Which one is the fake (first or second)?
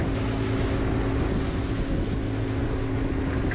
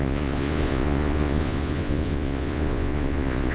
second